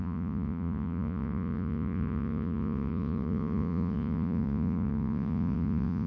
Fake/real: fake